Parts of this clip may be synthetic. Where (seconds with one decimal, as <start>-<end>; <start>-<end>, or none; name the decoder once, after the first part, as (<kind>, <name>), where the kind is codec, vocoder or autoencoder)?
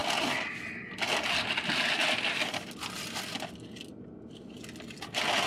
none